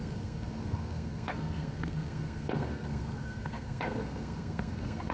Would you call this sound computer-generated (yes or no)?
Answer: yes